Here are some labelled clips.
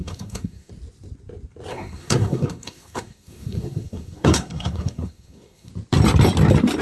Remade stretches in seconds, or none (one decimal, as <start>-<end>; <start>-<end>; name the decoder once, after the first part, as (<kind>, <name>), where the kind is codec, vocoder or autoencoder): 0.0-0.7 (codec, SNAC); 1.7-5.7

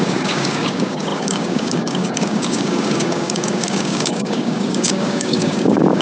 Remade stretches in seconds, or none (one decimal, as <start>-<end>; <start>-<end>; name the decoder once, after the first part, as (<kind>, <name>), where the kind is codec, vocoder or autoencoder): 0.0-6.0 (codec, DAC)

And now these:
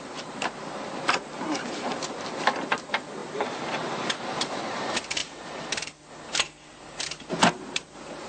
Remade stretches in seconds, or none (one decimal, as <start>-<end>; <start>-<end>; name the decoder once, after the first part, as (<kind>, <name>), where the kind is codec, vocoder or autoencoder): 0.0-8.3 (vocoder, BigVGAN v2)

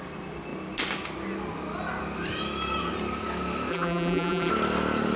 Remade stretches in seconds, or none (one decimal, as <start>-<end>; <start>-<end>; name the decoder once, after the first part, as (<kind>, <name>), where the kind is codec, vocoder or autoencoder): 3.7-4.5 (vocoder, BigVGAN v2)